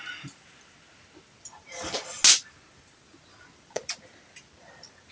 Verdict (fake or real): real